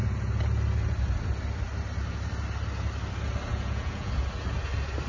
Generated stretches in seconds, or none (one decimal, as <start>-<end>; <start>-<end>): 3.5-4.1